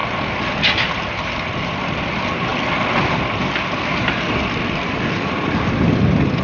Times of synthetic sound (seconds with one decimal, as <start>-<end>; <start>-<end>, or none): none